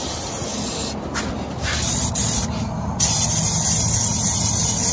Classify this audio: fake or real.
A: real